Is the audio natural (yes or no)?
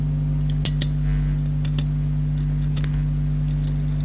yes